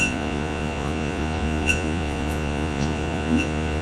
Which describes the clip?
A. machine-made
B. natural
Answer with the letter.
A